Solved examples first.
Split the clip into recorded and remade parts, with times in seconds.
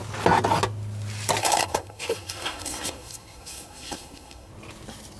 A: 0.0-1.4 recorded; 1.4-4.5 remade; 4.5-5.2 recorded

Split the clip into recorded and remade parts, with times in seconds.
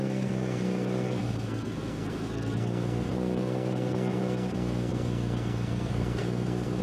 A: 0.0-6.8 remade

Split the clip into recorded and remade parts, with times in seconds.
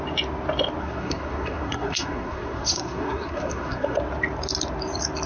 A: 0.0-0.8 recorded; 0.8-4.0 remade; 4.0-5.3 recorded